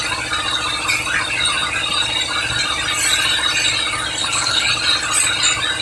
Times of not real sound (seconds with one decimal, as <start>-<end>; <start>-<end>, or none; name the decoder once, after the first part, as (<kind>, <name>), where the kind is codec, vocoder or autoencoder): 4.2-4.7 (codec, HILCodec)